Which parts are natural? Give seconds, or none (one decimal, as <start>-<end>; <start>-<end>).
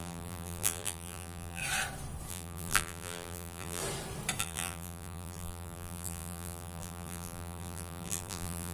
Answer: 1.6-2.3; 3.8-4.4